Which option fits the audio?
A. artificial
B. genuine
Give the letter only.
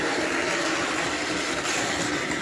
B